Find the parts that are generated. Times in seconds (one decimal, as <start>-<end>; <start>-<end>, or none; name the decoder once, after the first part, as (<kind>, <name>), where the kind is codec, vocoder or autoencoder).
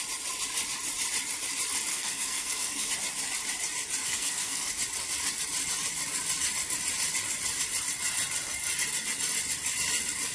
1.9-2.9 (codec, SNAC); 4.0-4.7